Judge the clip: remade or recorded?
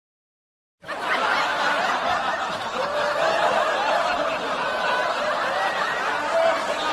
recorded